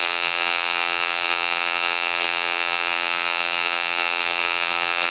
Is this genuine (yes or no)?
no